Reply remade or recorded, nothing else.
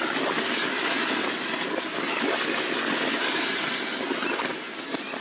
recorded